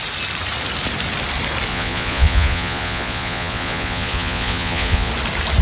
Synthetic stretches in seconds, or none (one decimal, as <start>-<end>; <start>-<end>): 1.7-5.1